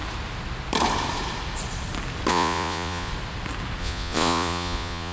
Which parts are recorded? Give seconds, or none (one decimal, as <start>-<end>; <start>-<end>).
0.0-2.3; 3.1-3.8

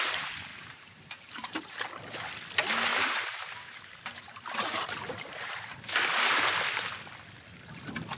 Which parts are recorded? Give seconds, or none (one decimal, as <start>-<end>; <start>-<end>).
0.0-0.5; 1.9-2.9; 5.7-8.2

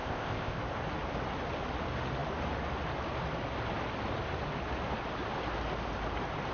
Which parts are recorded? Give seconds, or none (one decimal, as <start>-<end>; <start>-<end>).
0.6-6.5

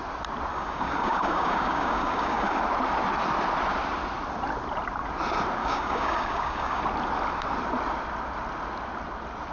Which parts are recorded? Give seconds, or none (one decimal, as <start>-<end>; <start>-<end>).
0.0-0.5; 2.6-5.6; 6.8-9.5

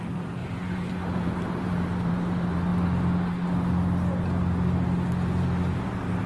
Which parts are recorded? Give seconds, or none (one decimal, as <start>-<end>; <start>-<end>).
2.7-6.3

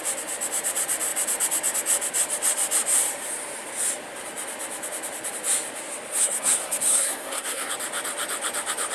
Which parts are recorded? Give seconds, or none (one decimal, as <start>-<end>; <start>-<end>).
0.0-6.2; 7.7-8.9

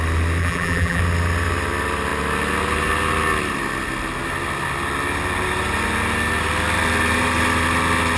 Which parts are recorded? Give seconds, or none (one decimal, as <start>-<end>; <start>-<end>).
0.0-0.4; 1.0-8.2

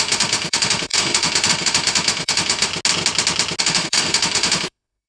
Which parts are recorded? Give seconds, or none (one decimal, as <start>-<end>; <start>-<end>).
2.7-3.6